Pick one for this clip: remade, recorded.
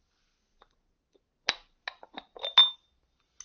recorded